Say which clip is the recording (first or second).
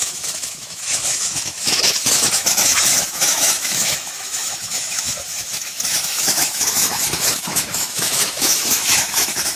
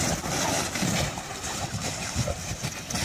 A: second